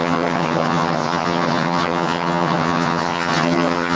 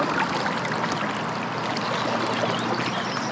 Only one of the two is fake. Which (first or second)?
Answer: first